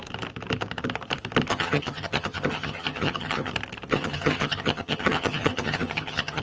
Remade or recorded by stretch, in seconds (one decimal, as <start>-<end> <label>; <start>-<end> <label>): 0.0-1.5 recorded; 1.5-3.5 remade; 3.5-3.9 recorded; 3.9-6.4 remade